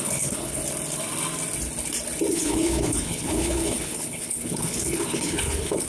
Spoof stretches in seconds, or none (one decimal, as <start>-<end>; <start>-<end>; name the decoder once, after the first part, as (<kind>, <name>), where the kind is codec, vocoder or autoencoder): 0.0-0.6 (codec, HILCodec); 2.3-5.9

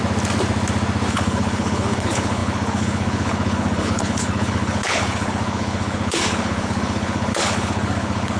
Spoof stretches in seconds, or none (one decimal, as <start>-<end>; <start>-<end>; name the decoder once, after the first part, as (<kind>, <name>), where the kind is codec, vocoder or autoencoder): 1.1-8.4 (codec, HILCodec)

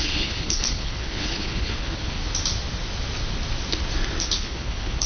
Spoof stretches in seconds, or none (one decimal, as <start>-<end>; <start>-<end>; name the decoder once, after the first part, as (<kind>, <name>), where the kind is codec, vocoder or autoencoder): 0.0-2.2 (codec, HILCodec); 4.2-5.1

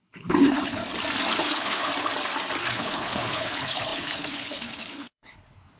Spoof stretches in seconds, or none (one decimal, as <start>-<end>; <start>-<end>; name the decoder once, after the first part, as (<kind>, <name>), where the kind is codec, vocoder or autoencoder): 0.0-0.8 (codec, HILCodec); 1.4-1.9; 2.6-5.8

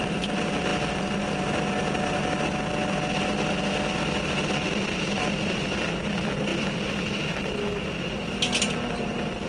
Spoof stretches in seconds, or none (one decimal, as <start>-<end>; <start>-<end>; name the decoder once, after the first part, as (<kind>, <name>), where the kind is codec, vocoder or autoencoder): none

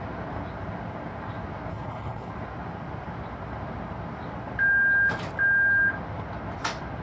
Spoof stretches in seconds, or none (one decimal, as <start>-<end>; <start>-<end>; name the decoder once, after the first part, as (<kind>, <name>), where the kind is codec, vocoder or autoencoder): 1.7-2.3 (codec, HILCodec)

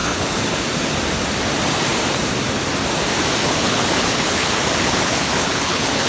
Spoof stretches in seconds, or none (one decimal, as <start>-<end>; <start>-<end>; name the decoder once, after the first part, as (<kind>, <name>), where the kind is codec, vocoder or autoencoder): 0.0-0.6 (codec, HILCodec); 3.4-6.1

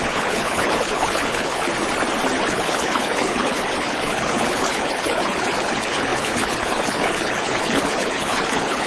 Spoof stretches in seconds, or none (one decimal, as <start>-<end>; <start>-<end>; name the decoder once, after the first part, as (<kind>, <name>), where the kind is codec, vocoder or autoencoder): 0.0-1.7 (codec, HILCodec); 2.5-8.9